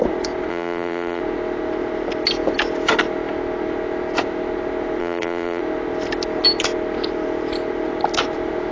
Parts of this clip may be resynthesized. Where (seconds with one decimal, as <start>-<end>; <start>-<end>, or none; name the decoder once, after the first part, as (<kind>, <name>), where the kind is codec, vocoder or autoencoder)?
0.5-1.2 (vocoder, BigVGAN v2); 5.0-5.6